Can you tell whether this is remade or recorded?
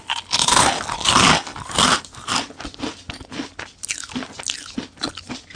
recorded